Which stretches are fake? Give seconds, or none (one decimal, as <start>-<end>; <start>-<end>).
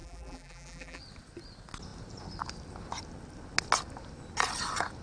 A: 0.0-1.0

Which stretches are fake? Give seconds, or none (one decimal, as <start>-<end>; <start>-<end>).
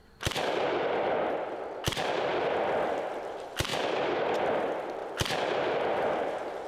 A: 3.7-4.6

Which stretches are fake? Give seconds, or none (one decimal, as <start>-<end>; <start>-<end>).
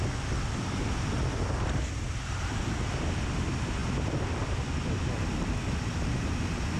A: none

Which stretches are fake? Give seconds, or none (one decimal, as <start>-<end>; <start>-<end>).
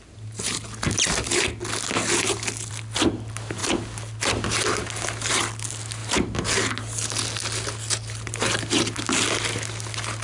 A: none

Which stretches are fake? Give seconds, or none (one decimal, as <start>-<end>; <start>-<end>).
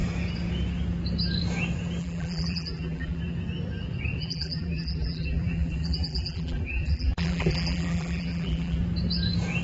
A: 2.0-3.2; 4.2-8.8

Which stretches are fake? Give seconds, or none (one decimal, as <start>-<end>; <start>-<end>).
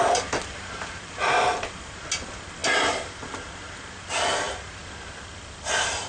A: none